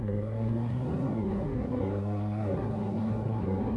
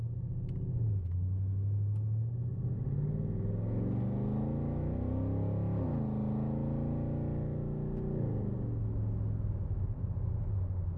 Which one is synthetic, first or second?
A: first